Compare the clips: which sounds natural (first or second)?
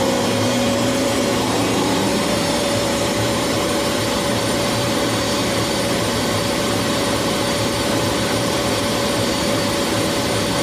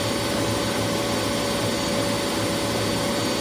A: second